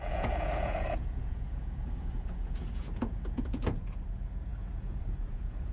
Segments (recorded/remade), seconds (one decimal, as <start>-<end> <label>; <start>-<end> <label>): 0.0-5.7 remade